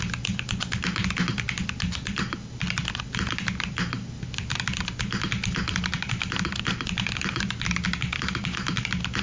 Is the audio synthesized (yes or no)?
no